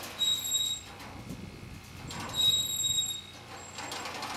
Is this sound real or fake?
real